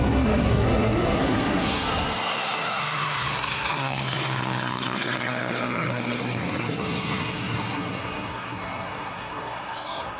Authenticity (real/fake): fake